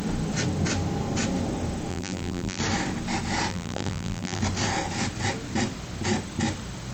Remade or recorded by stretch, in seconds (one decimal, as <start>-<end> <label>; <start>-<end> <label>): 0.0-1.9 recorded; 1.9-2.6 remade; 2.6-3.5 recorded; 3.5-4.4 remade; 4.4-6.9 recorded